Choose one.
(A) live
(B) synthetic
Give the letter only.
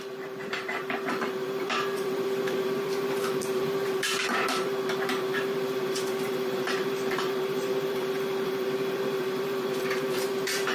B